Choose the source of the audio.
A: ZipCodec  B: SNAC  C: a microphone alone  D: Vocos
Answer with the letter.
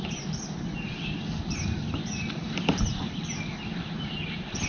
C